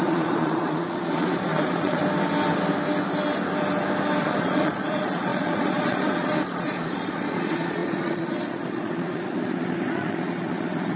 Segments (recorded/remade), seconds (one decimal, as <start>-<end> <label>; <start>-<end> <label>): 0.0-2.0 remade; 2.0-4.2 recorded; 4.2-11.0 remade